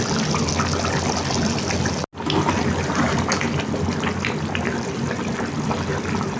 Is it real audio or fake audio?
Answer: real